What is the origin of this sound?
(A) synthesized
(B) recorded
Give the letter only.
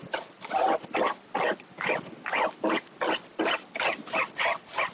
B